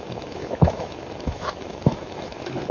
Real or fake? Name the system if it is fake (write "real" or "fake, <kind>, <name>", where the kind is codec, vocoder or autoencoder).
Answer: fake, autoencoder, DAC-VAE